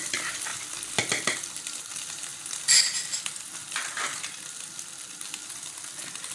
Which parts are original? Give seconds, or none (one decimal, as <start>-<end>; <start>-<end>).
0.5-1.0; 2.3-6.3